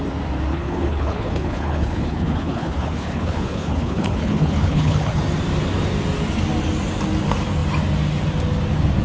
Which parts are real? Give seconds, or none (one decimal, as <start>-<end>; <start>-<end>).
0.0-0.5; 5.2-9.0

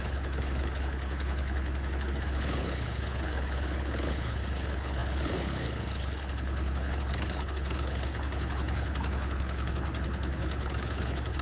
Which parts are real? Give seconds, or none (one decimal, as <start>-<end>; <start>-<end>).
none

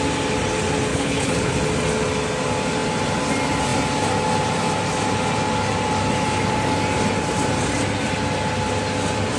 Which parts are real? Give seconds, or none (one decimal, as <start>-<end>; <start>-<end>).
0.0-0.9; 1.5-9.4

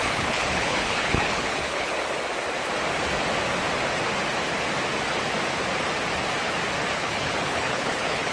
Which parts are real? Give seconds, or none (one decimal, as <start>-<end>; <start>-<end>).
1.9-6.9